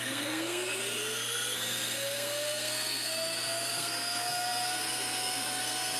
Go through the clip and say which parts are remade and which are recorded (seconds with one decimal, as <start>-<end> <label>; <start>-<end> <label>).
0.0-6.0 remade